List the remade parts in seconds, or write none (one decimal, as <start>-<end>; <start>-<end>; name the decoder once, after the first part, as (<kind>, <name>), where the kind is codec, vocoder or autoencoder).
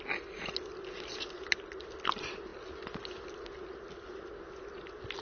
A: none